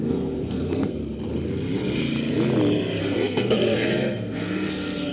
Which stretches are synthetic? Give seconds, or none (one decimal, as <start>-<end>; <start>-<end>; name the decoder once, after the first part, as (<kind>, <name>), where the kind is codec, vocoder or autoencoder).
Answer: 0.0-1.0 (codec, SNAC); 3.0-5.1